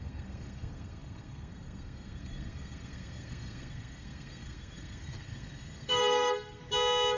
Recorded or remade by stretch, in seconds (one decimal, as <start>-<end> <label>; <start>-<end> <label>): 0.0-6.6 remade; 6.6-7.2 recorded